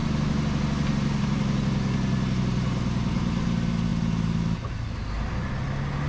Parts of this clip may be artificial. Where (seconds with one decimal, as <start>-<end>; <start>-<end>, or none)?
none